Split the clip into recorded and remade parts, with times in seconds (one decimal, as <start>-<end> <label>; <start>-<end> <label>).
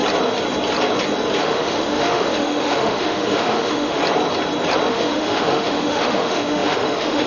0.0-1.4 recorded; 1.4-4.0 remade; 4.0-4.9 recorded; 4.9-7.3 remade